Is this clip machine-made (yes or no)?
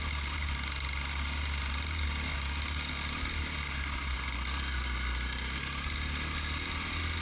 no